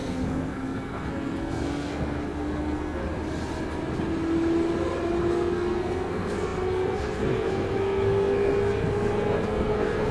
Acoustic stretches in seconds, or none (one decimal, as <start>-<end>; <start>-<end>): 3.0-5.3